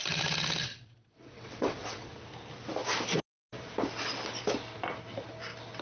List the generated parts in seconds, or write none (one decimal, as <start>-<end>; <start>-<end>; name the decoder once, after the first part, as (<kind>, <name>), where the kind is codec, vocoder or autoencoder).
0.7-2.1 (vocoder, WaveNeXt)